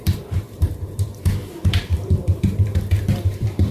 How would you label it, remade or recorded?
remade